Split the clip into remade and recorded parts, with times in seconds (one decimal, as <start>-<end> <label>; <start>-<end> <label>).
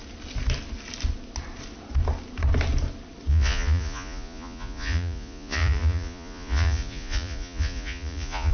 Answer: 0.0-3.3 recorded; 3.3-8.5 remade